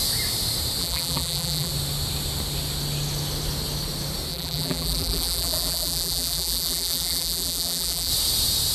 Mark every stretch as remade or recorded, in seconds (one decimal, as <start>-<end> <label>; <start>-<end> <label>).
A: 0.0-0.8 recorded; 0.8-1.7 remade; 1.7-4.3 recorded; 4.3-8.1 remade; 8.1-8.7 recorded